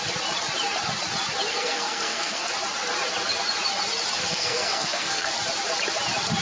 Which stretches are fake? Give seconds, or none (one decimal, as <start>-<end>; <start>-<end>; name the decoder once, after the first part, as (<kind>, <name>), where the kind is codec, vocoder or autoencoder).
1.5-2.5 (codec, SNAC); 4.2-5.3